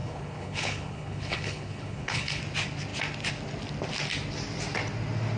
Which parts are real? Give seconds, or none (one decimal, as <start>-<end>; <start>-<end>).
2.4-5.4